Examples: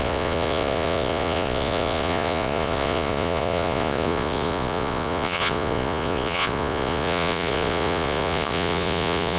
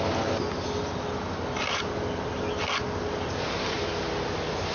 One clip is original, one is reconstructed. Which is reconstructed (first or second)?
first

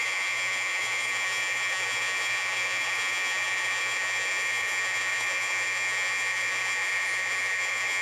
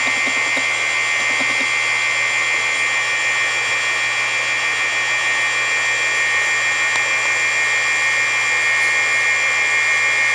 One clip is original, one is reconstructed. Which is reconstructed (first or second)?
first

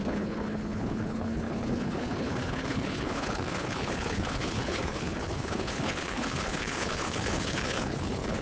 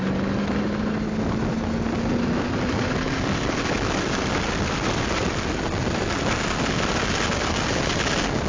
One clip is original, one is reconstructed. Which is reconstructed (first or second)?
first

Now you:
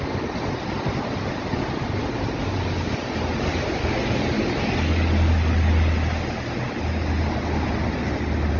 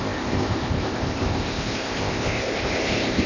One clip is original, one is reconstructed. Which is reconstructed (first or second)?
second